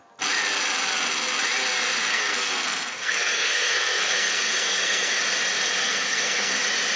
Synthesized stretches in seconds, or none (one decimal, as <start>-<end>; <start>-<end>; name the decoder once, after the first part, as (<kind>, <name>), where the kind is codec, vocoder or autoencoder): 2.1-5.2 (codec, SNAC); 5.8-6.6